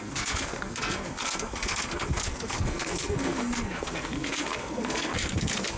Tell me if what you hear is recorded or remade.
remade